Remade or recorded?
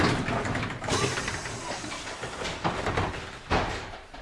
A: recorded